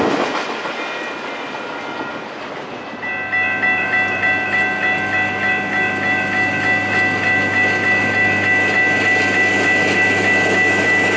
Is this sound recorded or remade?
recorded